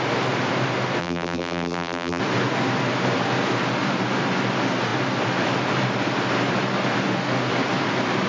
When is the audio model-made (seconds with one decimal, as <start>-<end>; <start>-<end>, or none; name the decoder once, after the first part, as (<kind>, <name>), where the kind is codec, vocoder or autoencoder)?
1.0-2.2 (vocoder, BigVGAN v2)